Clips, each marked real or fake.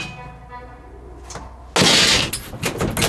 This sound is real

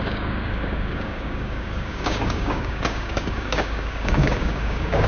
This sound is fake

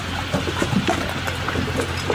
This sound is real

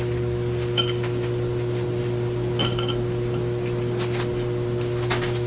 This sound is real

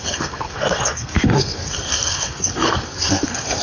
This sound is fake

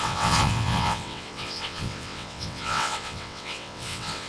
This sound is fake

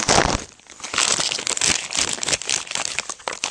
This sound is real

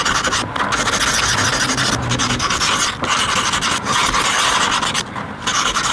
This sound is real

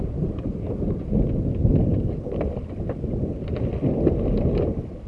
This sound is real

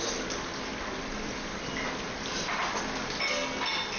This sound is real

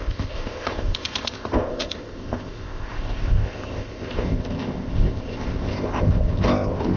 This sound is fake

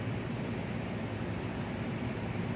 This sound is real